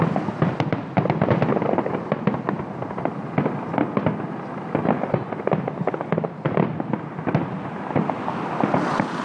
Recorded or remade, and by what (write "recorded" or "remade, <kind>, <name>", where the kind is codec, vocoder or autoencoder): recorded